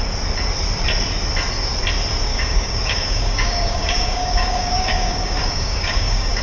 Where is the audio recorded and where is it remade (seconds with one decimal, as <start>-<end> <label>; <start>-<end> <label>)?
0.0-2.3 recorded; 2.3-6.4 remade